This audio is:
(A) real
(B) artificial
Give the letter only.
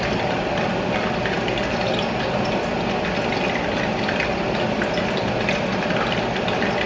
A